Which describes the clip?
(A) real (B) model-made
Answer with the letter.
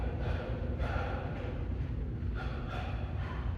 B